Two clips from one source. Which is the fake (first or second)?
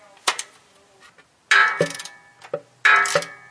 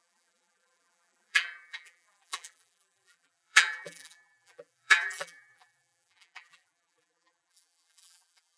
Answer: second